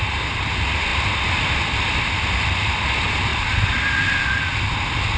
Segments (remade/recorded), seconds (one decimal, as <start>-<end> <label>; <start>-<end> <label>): 0.0-5.2 recorded